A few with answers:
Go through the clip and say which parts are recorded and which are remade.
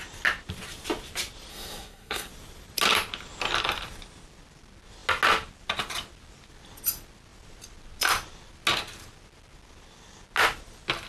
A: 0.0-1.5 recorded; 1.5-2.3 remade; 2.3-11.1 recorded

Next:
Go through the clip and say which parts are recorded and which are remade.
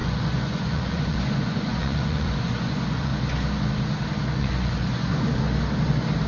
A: 0.0-3.1 remade; 3.1-4.4 recorded; 4.4-5.3 remade; 5.3-6.3 recorded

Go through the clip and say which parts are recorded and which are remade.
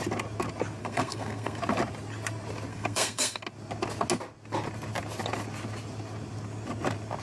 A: 0.0-0.8 recorded; 0.8-1.6 remade; 1.6-2.7 recorded; 2.7-3.4 remade; 3.4-7.2 recorded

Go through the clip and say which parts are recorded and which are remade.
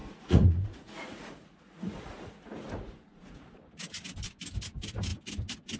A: 0.0-3.5 remade; 3.5-5.8 recorded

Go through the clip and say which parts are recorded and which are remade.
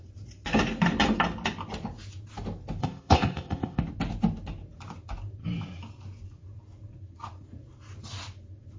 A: 0.0-2.8 recorded; 2.8-3.8 remade; 3.8-8.8 recorded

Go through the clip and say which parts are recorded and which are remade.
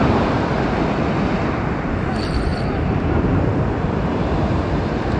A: 0.0-5.2 recorded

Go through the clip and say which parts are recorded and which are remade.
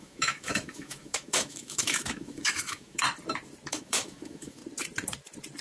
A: 0.0-3.0 remade; 3.0-3.7 recorded; 3.7-4.6 remade; 4.6-5.6 recorded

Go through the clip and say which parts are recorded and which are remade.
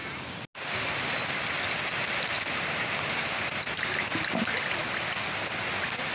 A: 0.0-6.1 recorded